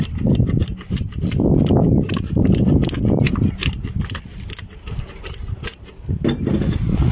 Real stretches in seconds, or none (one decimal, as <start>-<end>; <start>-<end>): 0.0-7.1